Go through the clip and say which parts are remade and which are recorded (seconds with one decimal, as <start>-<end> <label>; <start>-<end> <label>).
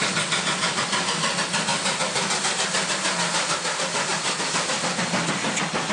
0.0-4.1 recorded; 4.1-4.7 remade; 4.7-5.9 recorded